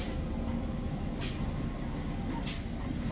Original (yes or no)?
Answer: yes